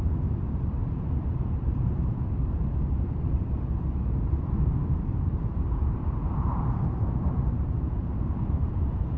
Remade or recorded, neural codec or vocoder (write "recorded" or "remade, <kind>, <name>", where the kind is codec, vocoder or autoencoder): remade, vocoder, BigVGAN v2